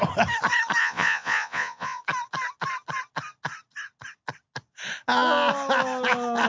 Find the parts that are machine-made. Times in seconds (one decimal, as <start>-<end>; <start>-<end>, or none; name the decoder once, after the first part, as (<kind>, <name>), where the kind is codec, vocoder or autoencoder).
0.8-2.0 (vocoder, Vocos)